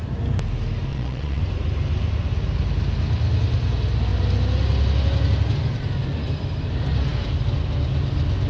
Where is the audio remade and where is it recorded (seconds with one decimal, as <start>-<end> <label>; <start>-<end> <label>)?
0.0-0.9 recorded; 0.9-1.4 remade; 1.4-8.5 recorded